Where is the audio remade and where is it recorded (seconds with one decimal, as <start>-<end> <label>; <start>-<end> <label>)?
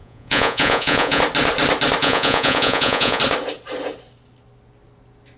0.0-1.2 remade; 1.2-2.0 recorded; 2.0-3.2 remade; 3.2-5.4 recorded